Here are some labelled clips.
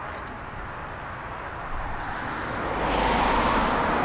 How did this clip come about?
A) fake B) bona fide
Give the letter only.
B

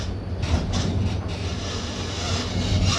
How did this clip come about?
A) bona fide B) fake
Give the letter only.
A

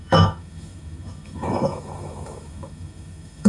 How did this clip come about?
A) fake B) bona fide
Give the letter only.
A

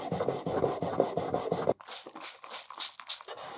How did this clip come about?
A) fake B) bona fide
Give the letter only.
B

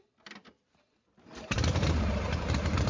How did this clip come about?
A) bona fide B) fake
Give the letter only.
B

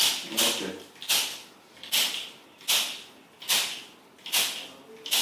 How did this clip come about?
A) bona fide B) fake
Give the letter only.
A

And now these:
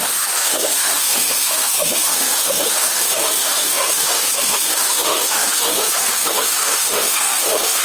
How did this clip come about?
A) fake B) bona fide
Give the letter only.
A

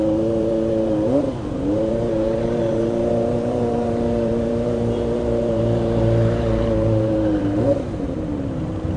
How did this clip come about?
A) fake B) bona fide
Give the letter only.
A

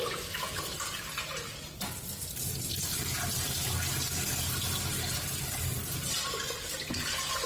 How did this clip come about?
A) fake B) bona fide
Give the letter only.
B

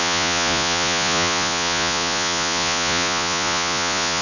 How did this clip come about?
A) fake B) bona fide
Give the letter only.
A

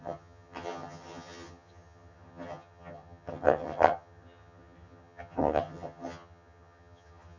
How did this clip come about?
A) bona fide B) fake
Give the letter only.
B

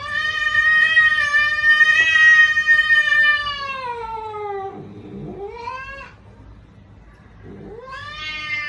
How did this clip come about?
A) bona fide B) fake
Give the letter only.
A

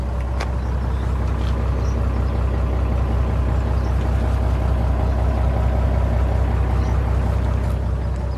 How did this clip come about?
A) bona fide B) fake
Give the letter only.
A